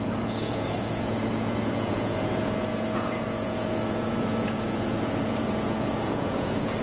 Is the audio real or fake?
fake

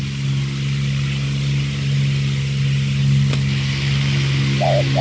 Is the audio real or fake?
real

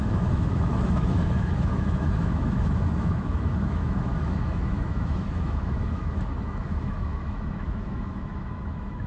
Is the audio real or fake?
fake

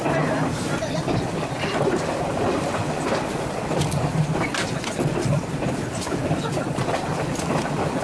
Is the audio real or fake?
real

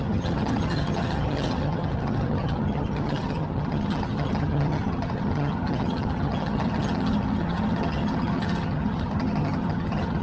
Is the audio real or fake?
fake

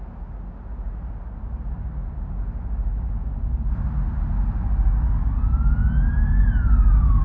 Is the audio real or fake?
real